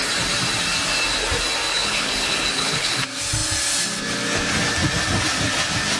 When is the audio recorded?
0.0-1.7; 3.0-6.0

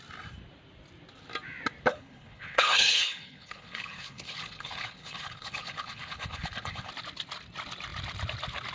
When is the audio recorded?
0.0-1.9; 6.9-8.7

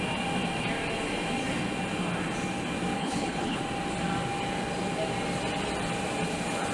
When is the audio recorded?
0.0-3.0; 3.6-6.7

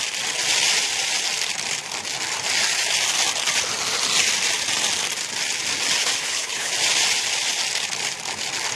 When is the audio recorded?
0.0-6.0; 6.7-8.8

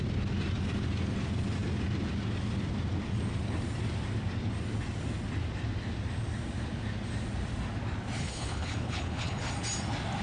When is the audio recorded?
0.0-8.2; 9.5-10.2

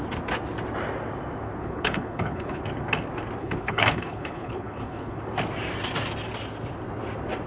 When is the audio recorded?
0.0-1.6; 2.6-3.4; 5.2-7.5